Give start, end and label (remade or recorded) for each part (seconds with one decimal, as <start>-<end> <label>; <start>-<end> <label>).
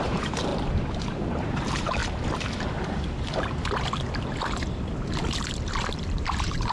0.0-0.5 remade; 0.5-1.1 recorded; 1.1-2.0 remade; 2.0-6.0 recorded; 6.0-6.7 remade